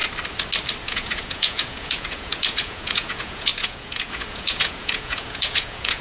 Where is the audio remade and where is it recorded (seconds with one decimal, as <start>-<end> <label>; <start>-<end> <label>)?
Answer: 0.0-0.8 recorded; 0.8-6.0 remade